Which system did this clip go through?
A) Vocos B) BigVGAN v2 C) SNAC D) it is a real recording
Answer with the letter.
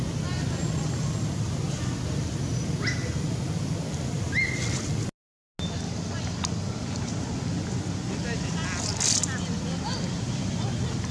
D